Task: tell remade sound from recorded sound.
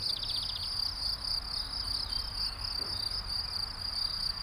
recorded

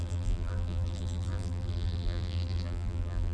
remade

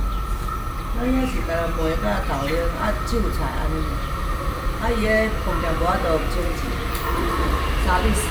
recorded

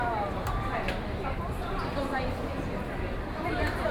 remade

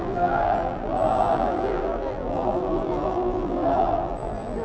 remade